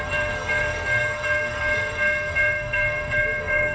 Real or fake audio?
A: fake